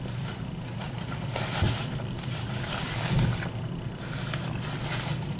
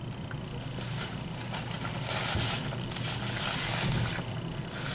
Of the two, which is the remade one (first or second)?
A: first